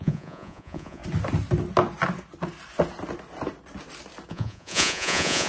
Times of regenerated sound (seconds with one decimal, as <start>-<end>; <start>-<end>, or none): 0.0-1.0; 4.3-5.5